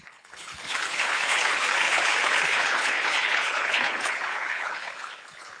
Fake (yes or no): yes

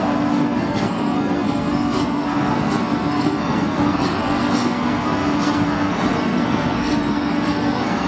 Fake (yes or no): yes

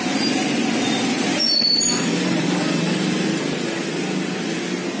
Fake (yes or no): no